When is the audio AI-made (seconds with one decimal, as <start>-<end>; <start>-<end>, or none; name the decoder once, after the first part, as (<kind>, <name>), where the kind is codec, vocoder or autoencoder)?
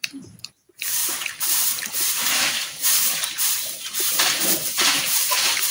0.0-5.7 (vocoder, BigVGAN v2)